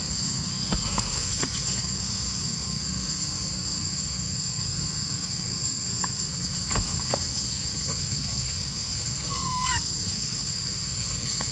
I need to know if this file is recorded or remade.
remade